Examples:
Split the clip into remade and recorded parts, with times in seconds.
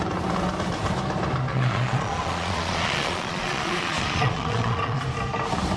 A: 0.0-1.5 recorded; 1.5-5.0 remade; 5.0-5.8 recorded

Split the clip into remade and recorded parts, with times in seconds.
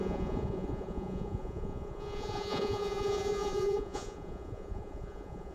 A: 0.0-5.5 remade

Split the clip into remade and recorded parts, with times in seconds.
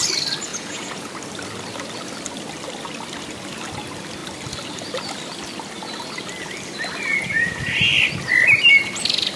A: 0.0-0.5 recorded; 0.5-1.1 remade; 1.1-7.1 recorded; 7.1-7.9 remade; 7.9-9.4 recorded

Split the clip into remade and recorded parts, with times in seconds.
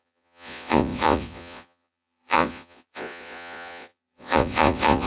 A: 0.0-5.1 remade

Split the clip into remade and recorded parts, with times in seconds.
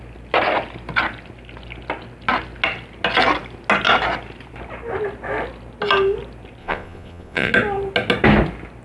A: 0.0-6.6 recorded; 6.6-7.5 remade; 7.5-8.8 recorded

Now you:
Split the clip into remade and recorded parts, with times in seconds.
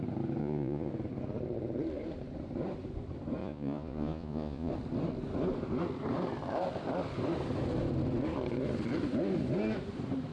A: 0.0-0.4 recorded; 0.4-0.9 remade; 0.9-3.4 recorded; 3.4-4.7 remade; 4.7-10.3 recorded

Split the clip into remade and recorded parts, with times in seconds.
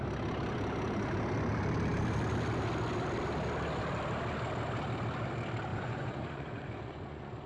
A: 0.0-5.7 recorded; 5.7-7.5 remade